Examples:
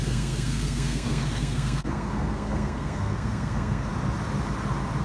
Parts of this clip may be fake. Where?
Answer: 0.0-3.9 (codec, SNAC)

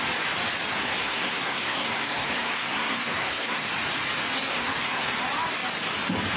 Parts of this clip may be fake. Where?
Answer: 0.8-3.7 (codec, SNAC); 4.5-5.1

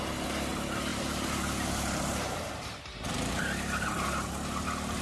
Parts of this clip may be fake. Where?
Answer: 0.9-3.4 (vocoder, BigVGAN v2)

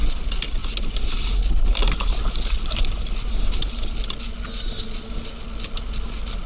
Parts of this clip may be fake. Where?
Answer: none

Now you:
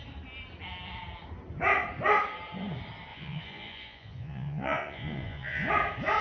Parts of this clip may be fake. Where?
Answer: 3.1-5.7 (vocoder, Vocos)

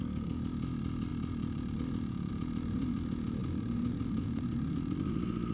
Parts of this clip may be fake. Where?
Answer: 1.1-2.3 (vocoder, BigVGAN v2); 3.4-5.1

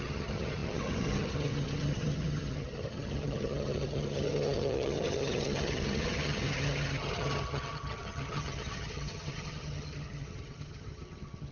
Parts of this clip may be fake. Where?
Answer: 0.0-11.5 (vocoder, HiFi-GAN)

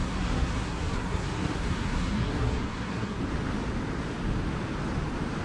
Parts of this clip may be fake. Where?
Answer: 0.0-3.2 (codec, SNAC)